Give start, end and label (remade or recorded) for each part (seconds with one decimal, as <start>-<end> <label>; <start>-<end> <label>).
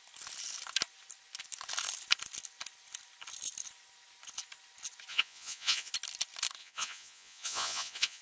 0.0-5.1 recorded; 5.1-5.9 remade; 5.9-6.6 recorded; 6.6-8.2 remade